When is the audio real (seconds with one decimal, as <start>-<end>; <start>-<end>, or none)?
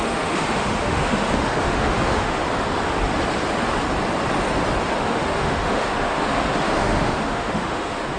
2.4-5.0